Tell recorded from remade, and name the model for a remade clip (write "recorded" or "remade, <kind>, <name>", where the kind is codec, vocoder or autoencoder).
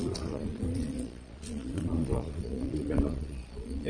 remade, vocoder, Vocos